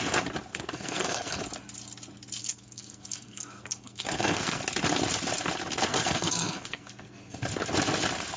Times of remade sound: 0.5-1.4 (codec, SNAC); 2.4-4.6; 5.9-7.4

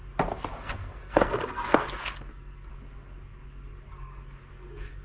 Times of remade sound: 0.6-2.7 (codec, SNAC); 3.9-5.0

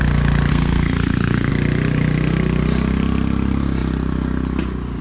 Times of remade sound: 0.5-1.5 (codec, SNAC)

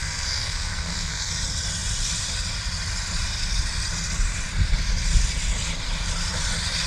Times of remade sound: 0.0-1.3 (codec, SNAC)